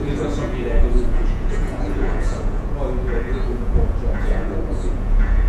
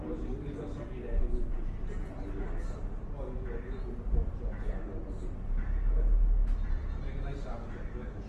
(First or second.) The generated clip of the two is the first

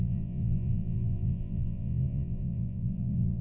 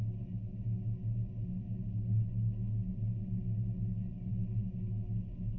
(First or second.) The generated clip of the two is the first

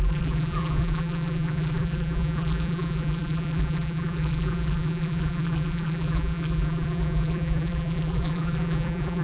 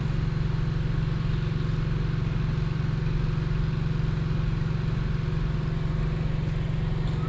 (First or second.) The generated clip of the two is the first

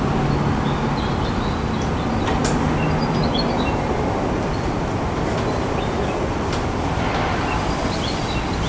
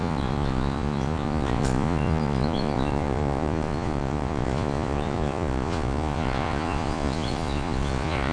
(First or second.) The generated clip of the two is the second